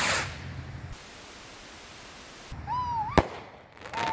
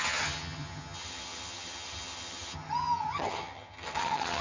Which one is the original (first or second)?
first